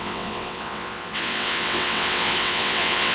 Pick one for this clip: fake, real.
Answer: fake